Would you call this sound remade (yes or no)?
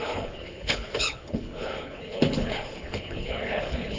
yes